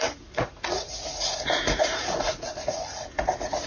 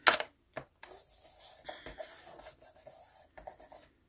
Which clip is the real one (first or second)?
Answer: second